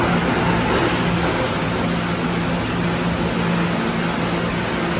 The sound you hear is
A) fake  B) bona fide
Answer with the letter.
B